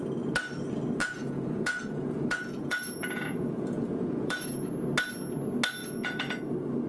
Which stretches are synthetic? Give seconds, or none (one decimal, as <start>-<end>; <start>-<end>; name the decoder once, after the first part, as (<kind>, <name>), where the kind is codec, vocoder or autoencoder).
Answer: 1.0-4.7 (vocoder, Vocos); 5.8-6.3

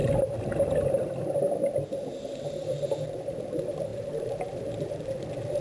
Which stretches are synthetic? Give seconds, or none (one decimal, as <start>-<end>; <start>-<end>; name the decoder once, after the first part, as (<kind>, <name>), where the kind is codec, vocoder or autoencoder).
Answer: 3.9-4.6 (vocoder, BigVGAN v2)

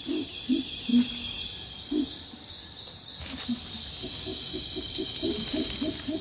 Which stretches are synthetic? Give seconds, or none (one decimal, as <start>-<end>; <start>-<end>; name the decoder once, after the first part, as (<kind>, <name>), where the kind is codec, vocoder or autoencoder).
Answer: none

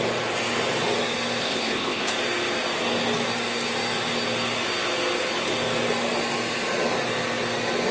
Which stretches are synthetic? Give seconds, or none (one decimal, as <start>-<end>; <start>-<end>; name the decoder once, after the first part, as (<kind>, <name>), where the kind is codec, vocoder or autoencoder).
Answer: 1.4-2.1 (codec, ZipCodec)

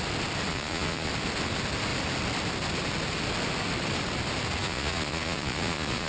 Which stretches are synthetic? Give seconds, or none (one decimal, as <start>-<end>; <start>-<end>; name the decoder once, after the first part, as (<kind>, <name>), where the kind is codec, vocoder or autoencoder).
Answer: 0.5-1.1 (vocoder, Vocos); 4.6-6.1

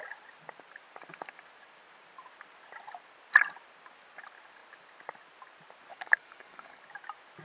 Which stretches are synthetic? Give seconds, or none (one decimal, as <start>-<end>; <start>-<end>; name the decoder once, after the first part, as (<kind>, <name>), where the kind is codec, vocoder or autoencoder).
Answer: 5.9-6.8 (codec, DAC)

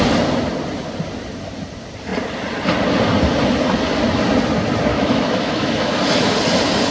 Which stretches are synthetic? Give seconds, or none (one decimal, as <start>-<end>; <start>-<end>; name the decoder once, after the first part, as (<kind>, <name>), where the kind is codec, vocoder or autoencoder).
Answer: 4.9-5.9 (autoencoder, DAC-VAE)